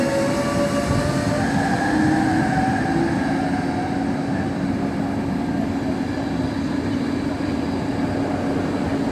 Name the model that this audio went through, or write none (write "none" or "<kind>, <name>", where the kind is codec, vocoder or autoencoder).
none